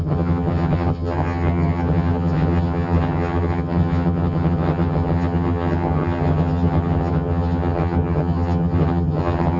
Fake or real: fake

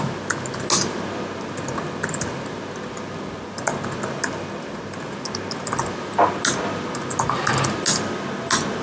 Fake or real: real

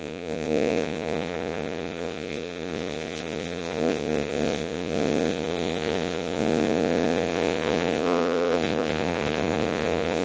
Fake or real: fake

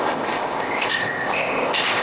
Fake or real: fake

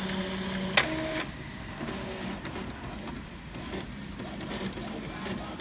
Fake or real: real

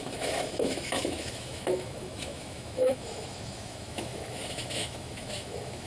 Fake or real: fake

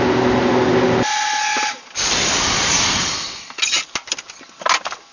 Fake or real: real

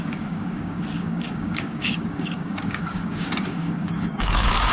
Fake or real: fake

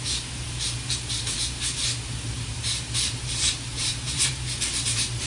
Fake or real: fake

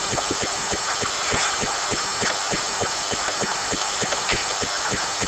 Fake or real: real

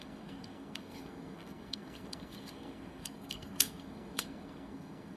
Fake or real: fake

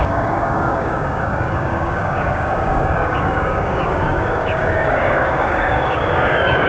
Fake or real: fake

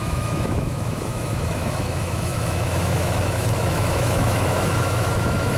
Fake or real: fake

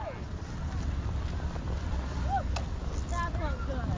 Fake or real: real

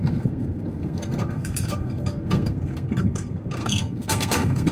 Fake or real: fake